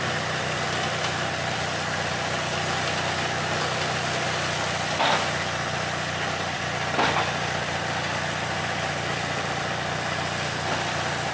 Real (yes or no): yes